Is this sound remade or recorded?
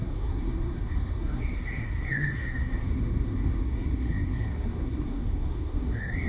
remade